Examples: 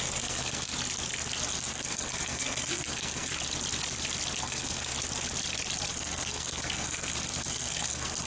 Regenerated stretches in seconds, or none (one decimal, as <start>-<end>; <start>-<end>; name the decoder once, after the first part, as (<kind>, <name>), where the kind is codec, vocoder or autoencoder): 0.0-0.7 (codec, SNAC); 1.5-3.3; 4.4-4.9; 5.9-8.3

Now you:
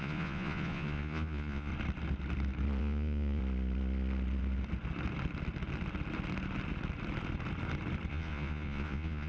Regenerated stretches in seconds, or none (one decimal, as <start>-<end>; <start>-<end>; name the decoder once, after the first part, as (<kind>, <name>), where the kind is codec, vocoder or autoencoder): 0.0-1.7 (vocoder, Vocos); 2.8-3.4; 8.1-9.3

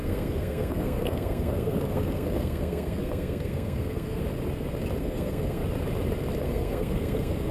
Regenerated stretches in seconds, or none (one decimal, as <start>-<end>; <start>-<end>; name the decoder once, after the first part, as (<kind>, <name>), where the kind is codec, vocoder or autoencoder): 0.0-4.2 (codec, SNAC); 5.0-5.6; 6.4-7.5

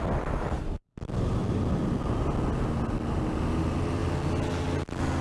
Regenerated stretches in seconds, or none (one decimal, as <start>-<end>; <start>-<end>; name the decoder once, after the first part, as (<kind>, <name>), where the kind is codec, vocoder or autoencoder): none

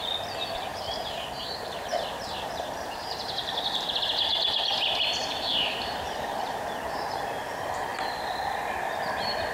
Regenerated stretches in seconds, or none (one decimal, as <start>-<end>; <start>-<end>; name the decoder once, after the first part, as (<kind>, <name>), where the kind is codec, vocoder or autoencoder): 0.7-1.5 (vocoder, BigVGAN v2); 1.9-3.5; 5.2-7.2

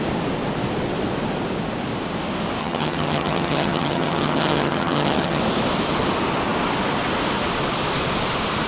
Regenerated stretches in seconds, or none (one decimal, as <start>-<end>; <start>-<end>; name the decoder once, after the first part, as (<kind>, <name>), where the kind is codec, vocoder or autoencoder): 2.6-5.4 (vocoder, HiFi-GAN)

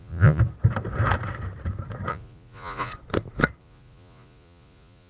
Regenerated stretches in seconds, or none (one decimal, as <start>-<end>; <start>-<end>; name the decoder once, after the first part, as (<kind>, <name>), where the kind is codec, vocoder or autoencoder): 0.0-0.4 (vocoder, Vocos); 2.1-2.9; 3.6-5.1